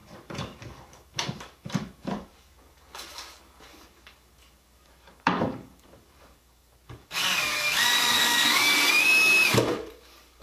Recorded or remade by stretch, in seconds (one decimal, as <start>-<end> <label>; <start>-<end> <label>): 0.0-10.4 remade